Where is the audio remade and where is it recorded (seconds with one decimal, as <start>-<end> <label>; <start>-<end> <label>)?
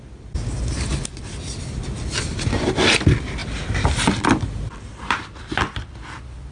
0.0-3.4 recorded; 3.4-5.9 remade; 5.9-6.5 recorded